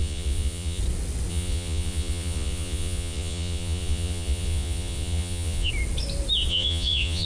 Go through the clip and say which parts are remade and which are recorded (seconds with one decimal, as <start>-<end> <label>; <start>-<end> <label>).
0.0-0.8 remade; 0.8-1.3 recorded; 1.3-5.7 remade; 5.7-6.5 recorded; 6.5-7.3 remade